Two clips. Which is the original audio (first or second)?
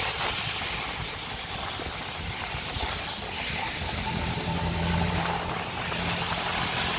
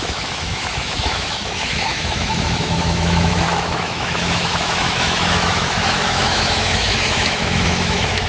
first